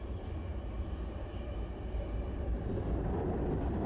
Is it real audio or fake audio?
real